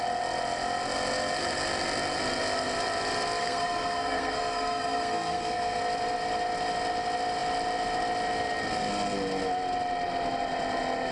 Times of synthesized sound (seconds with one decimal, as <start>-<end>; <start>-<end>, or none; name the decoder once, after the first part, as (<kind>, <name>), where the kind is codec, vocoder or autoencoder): 3.4-5.8 (codec, SNAC)